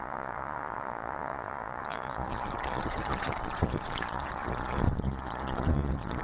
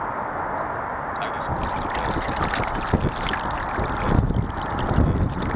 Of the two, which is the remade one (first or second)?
first